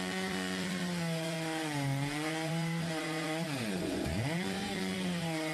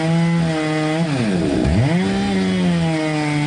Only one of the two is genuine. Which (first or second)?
second